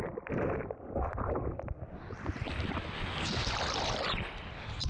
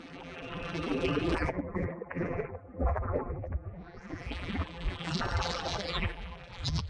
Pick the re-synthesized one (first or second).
second